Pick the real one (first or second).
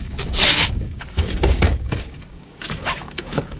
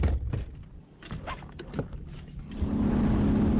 second